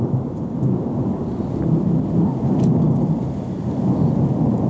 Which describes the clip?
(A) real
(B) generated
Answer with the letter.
A